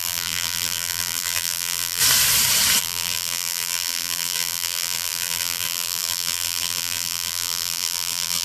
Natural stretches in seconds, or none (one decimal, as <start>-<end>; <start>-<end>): 2.0-2.8